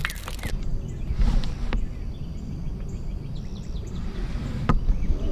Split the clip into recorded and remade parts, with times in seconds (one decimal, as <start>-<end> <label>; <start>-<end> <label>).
0.0-5.3 recorded